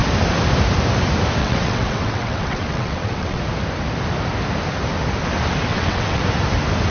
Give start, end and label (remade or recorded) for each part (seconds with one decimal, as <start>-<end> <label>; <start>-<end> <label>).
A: 0.0-1.4 recorded; 1.4-3.4 remade; 3.4-5.7 recorded; 5.7-6.2 remade; 6.2-6.9 recorded

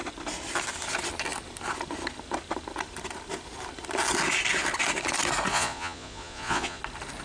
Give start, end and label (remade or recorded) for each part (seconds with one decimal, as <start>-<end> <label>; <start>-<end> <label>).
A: 0.0-5.5 recorded; 5.5-6.8 remade; 6.8-7.2 recorded